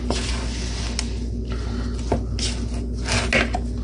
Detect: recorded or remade recorded